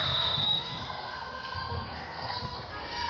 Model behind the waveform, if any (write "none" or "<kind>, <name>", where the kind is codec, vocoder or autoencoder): codec, SNAC